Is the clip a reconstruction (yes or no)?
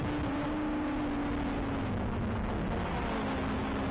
no